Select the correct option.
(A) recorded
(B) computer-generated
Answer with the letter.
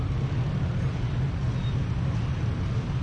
A